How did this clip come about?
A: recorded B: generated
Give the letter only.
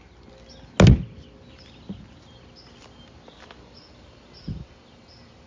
A